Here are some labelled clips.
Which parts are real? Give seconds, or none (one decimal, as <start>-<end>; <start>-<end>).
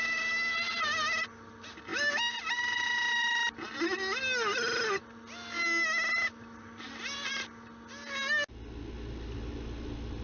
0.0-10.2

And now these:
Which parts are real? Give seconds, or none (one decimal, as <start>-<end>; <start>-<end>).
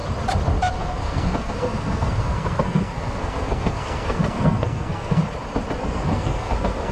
0.0-0.8; 5.2-5.8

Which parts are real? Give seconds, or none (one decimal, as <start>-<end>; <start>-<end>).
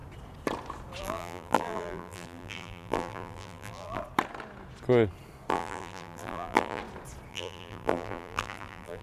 0.0-1.0; 4.0-5.5; 6.8-7.3